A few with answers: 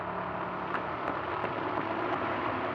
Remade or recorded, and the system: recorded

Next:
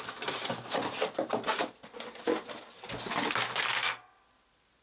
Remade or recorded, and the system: recorded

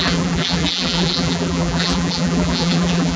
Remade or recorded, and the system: remade, vocoder, BigVGAN v2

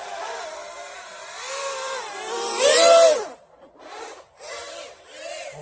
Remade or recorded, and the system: remade, vocoder, BigVGAN v2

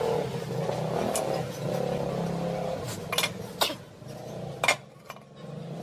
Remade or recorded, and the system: recorded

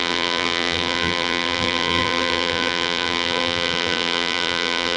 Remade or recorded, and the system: remade, vocoder, BigVGAN v2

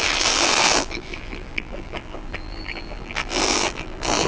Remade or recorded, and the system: remade, vocoder, BigVGAN v2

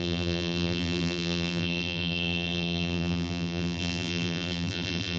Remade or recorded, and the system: remade, vocoder, BigVGAN v2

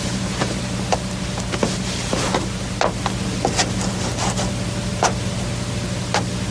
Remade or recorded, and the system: recorded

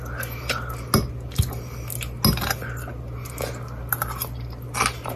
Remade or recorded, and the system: recorded